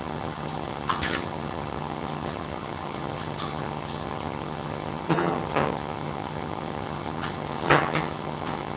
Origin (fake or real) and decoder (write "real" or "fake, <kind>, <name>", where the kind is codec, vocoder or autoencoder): fake, vocoder, HiFi-GAN